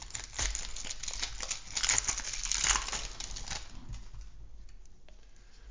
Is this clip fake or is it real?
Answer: real